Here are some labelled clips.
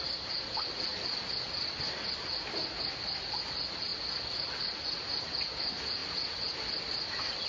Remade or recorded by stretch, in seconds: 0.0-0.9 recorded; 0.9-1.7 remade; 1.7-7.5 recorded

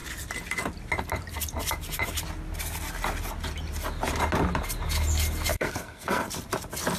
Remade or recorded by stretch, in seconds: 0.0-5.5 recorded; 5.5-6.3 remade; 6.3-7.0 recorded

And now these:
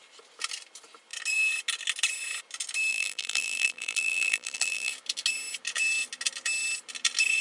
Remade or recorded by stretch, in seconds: 0.0-2.9 recorded; 2.9-4.9 remade; 4.9-7.4 recorded

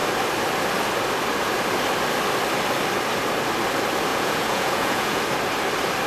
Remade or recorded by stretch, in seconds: 0.0-4.1 recorded; 4.1-5.2 remade; 5.2-6.1 recorded

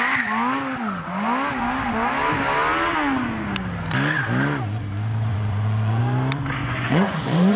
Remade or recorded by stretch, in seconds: 0.0-5.3 recorded; 5.3-6.0 remade; 6.0-6.6 recorded; 6.6-7.6 remade

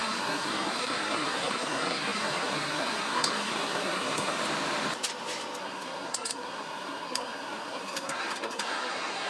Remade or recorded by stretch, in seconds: 0.0-4.4 remade; 4.4-5.6 recorded; 5.6-9.3 remade

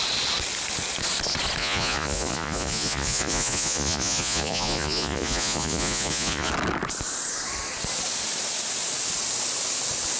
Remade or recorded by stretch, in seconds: 0.0-1.6 recorded; 1.6-6.5 remade; 6.5-10.2 recorded

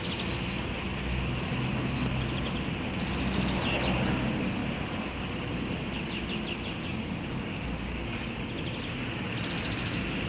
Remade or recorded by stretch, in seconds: 0.0-6.8 recorded; 6.8-8.3 remade; 8.3-10.3 recorded